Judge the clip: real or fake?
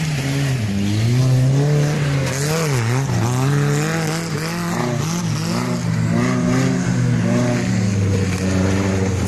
real